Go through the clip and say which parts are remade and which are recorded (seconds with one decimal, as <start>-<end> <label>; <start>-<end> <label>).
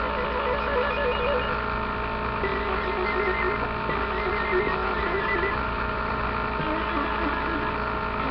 0.0-4.8 recorded; 4.8-6.2 remade; 6.2-8.3 recorded